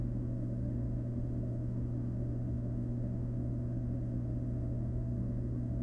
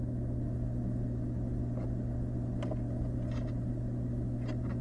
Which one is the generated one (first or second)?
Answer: first